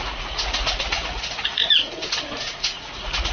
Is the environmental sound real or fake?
fake